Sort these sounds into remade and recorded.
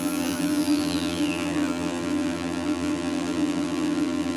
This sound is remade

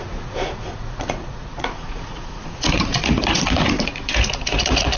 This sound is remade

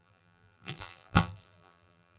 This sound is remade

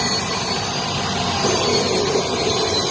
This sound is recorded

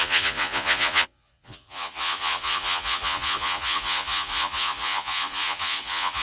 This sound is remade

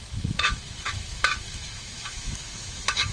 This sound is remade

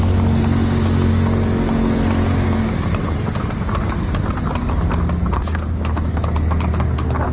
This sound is recorded